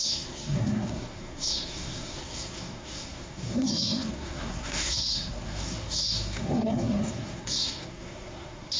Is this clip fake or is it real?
fake